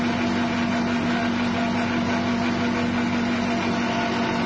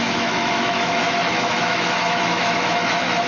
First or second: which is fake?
second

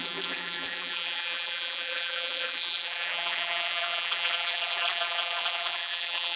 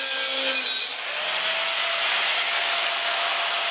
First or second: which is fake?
first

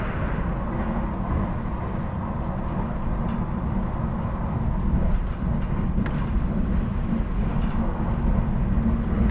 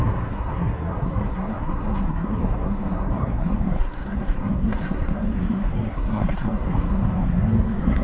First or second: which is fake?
second